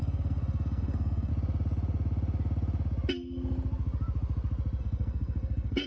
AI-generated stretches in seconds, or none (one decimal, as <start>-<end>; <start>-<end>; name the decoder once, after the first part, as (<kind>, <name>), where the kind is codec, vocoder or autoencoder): 0.0-1.3 (codec, SNAC); 4.8-5.9